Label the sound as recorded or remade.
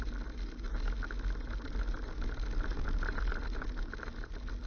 recorded